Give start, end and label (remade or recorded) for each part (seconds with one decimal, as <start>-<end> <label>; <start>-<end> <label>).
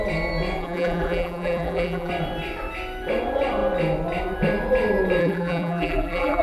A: 0.0-0.6 recorded; 0.6-2.1 remade; 2.1-5.2 recorded; 5.2-6.4 remade